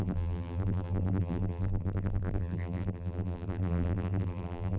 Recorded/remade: remade